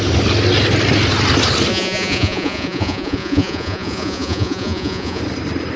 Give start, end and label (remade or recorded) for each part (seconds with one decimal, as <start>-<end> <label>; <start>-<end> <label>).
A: 0.0-1.7 recorded; 1.7-5.2 remade; 5.2-5.8 recorded